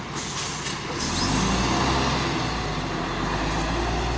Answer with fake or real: real